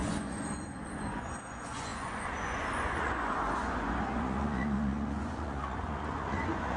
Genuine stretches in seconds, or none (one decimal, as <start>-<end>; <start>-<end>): none